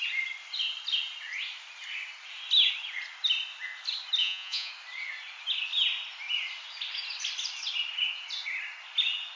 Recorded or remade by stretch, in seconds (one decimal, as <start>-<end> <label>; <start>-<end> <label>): 0.0-4.2 recorded; 4.2-4.7 remade; 4.7-9.4 recorded